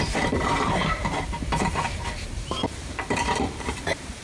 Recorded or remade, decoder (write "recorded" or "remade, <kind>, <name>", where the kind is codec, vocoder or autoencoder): remade, vocoder, BigVGAN v2